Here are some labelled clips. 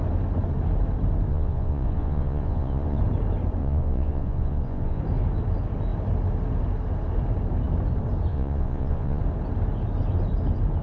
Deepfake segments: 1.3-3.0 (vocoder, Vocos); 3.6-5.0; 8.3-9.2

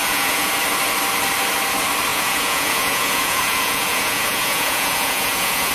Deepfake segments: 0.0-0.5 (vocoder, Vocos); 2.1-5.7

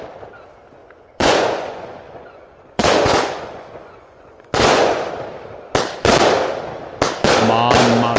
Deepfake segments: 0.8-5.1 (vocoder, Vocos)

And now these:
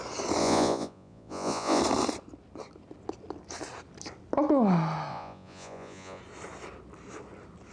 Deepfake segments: 0.4-1.8 (vocoder, Vocos); 5.1-6.2